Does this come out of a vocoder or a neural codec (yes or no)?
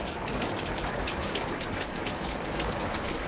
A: yes